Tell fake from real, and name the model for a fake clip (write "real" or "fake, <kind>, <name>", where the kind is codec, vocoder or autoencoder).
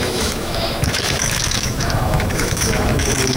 fake, autoencoder, DAC-VAE